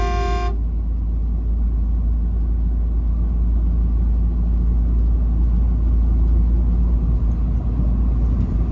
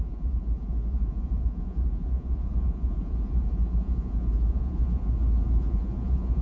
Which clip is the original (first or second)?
first